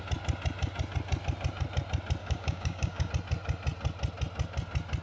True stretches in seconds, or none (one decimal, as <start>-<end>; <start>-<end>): 0.0-2.2; 3.1-5.0